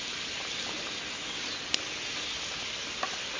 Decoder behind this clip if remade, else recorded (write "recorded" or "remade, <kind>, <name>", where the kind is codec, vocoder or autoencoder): recorded